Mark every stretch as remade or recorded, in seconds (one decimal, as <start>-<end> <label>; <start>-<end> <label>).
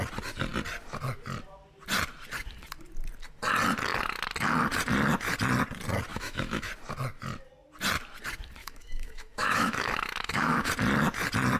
0.0-6.1 recorded; 6.1-6.7 remade; 6.7-8.6 recorded; 8.6-10.7 remade; 10.7-11.6 recorded